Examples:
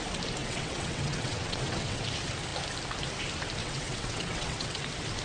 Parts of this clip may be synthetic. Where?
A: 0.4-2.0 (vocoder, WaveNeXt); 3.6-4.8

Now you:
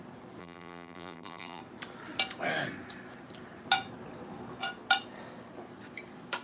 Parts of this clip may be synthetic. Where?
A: 0.4-1.6 (vocoder, BigVGAN v2)